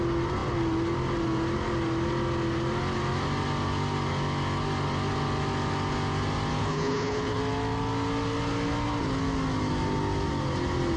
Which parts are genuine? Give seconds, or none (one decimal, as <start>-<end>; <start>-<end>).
0.0-6.6; 7.4-11.0